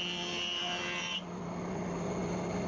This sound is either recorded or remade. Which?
recorded